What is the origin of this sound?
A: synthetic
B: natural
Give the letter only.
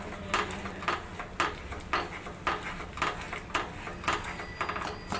B